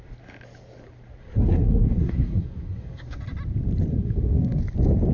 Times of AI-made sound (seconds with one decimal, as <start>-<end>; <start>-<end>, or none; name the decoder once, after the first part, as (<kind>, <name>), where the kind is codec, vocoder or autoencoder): 1.2-3.2 (codec, SNAC); 3.9-4.6